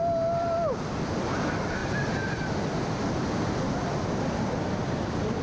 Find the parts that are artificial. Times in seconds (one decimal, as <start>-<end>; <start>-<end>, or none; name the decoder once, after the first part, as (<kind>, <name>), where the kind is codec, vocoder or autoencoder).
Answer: none